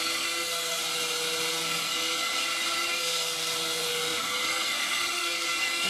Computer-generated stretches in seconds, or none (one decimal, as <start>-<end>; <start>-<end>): 0.0-0.8; 1.5-2.4; 2.9-5.9